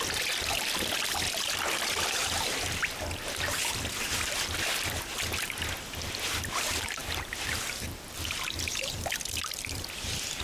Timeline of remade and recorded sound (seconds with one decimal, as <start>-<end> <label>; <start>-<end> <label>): 0.0-10.4 recorded